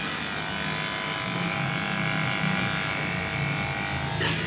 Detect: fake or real real